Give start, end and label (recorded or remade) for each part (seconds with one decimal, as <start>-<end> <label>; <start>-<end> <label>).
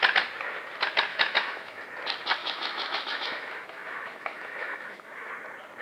0.0-1.1 recorded; 1.1-1.8 remade; 1.8-2.4 recorded; 2.4-5.3 remade; 5.3-5.8 recorded